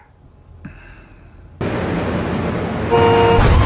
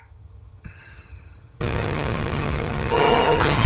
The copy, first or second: second